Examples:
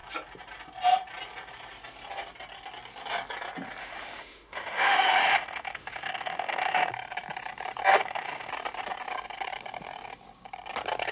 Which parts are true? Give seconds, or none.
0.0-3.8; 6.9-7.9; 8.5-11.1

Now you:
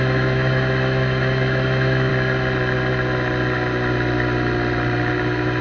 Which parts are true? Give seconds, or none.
2.1-5.6

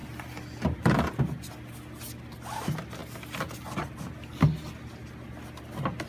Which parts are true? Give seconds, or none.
0.0-6.1

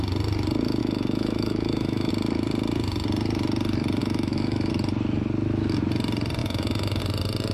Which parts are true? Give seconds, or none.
0.0-0.8; 2.1-4.0; 4.7-6.4; 7.0-7.5

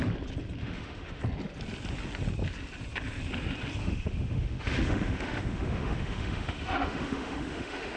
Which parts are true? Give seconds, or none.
0.0-0.6; 1.2-3.8